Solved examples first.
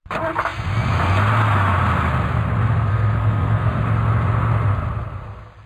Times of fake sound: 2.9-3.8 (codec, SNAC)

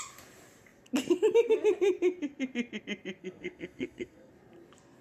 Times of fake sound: 3.2-4.3 (codec, SNAC)

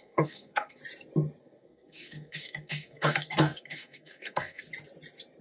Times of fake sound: 0.0-0.8 (codec, SNAC); 1.4-4.7

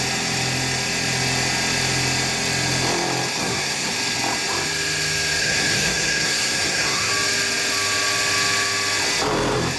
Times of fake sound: 3.4-3.9 (codec, SNAC); 5.4-7.1

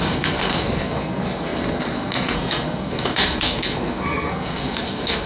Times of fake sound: 0.0-5.3 (codec, SNAC)

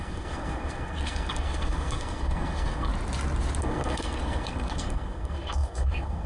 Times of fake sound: 0.0-2.9 (codec, SNAC); 3.6-6.3